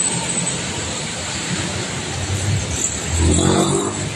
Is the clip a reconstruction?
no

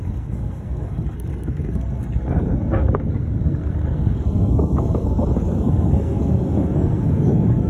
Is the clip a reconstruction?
yes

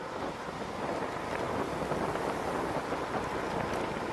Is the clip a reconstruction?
no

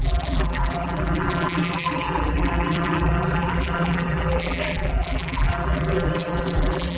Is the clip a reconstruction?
yes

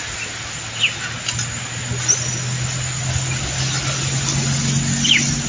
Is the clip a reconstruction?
no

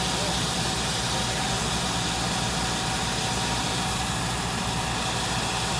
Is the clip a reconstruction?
no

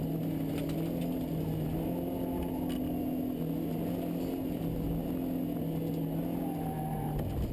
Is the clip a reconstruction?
no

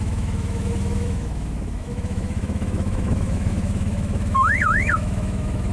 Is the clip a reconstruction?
yes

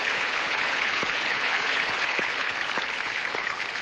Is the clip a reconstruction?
yes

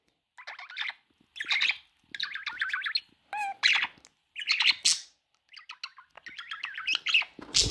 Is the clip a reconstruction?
no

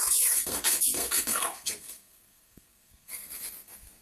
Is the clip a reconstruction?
yes